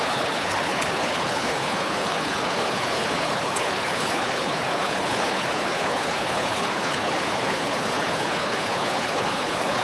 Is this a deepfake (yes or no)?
yes